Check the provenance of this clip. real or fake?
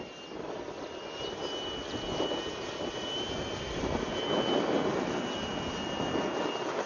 real